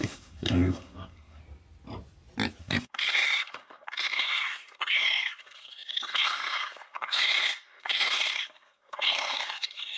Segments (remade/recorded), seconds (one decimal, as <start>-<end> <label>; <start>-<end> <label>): 0.0-1.4 remade; 1.4-2.6 recorded; 2.6-10.0 remade

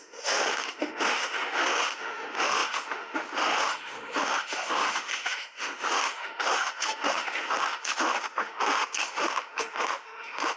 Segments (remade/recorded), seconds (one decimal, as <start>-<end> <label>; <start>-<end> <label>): 0.0-10.6 remade

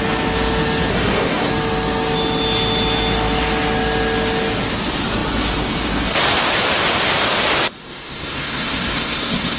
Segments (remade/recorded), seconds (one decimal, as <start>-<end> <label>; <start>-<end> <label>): 0.0-0.9 recorded; 0.9-1.5 remade; 1.5-7.8 recorded; 7.8-9.6 remade

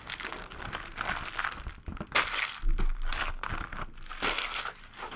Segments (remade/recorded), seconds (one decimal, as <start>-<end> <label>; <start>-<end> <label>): 0.0-5.2 recorded

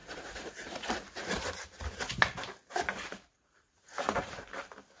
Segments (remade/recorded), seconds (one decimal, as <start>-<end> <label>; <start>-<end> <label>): 0.0-0.9 remade; 0.9-3.3 recorded; 3.3-4.3 remade; 4.3-5.0 recorded

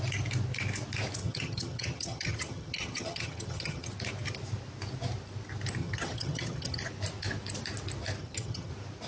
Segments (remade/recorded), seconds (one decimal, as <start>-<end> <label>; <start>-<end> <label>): 0.0-1.2 recorded; 1.2-3.9 remade; 3.9-5.8 recorded; 5.8-6.8 remade; 6.8-8.2 recorded; 8.2-8.7 remade; 8.7-9.1 recorded